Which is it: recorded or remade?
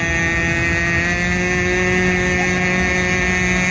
recorded